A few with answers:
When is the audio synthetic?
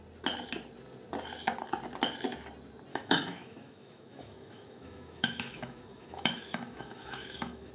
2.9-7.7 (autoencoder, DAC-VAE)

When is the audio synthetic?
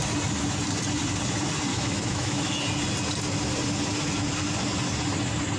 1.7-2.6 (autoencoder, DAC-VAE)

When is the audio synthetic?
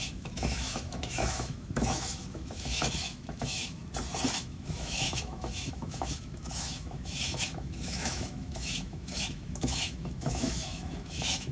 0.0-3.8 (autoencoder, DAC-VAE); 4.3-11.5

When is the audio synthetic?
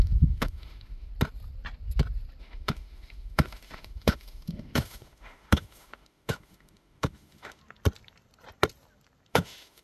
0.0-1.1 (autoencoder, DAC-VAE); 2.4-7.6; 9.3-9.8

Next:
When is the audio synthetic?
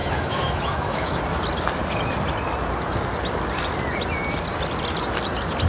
0.0-1.2 (autoencoder, DAC-VAE)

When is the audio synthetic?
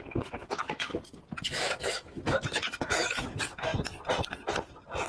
0.0-0.9 (autoencoder, DAC-VAE); 1.5-3.7